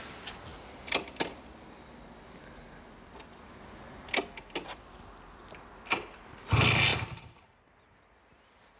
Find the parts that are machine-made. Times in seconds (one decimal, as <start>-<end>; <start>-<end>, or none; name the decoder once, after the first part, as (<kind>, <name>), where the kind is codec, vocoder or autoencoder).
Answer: none